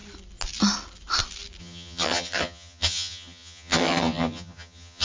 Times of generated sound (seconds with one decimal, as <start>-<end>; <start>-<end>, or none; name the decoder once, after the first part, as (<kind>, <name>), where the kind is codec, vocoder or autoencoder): 1.6-5.0 (vocoder, HiFi-GAN)